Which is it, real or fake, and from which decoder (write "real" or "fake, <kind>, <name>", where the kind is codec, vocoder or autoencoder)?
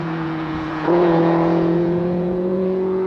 fake, vocoder, Vocos